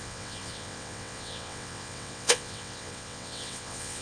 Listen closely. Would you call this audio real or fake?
fake